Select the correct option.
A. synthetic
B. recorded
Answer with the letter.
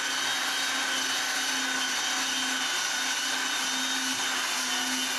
B